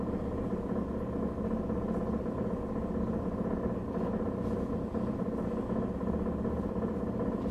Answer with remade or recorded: recorded